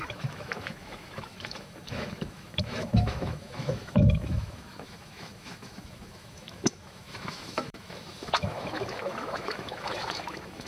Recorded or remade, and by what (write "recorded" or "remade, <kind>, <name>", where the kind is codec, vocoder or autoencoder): remade, autoencoder, DAC-VAE